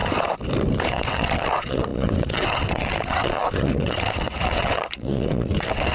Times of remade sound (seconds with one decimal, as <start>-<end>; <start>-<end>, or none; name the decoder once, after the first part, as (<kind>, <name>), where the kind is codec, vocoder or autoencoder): 0.9-5.9 (vocoder, WaveNeXt)

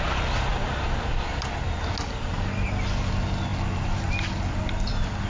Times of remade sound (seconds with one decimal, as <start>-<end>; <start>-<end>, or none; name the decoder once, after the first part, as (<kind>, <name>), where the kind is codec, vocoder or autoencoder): none

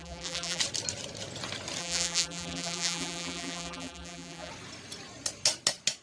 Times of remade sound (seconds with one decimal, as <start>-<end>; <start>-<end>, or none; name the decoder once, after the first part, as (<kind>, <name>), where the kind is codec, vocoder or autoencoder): 0.0-0.6 (vocoder, BigVGAN v2); 1.8-4.5